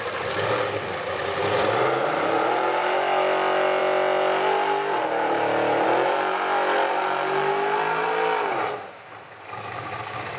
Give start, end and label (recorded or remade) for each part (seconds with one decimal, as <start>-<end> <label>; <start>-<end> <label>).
0.0-10.4 recorded